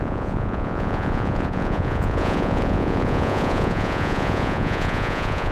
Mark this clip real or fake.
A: fake